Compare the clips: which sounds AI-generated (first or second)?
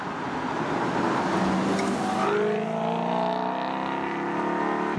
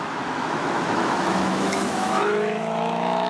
second